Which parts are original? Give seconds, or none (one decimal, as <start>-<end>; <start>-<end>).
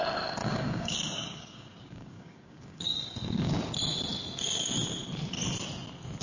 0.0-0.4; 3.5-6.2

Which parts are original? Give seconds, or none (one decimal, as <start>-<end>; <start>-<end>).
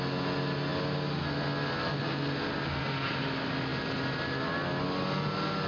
0.0-5.7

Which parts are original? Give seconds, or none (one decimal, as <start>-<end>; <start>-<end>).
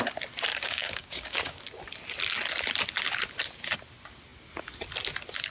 0.0-0.5; 1.6-5.5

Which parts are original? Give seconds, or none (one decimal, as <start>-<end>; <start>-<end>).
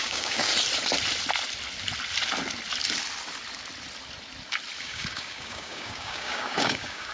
0.5-4.8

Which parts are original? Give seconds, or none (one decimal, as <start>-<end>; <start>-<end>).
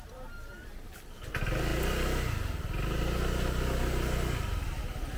0.0-5.2